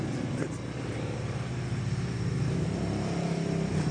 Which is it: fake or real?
real